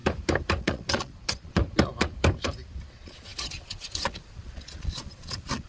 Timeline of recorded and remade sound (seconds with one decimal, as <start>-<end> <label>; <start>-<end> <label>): 0.0-0.6 recorded; 0.6-1.6 remade; 1.6-2.9 recorded; 2.9-5.7 remade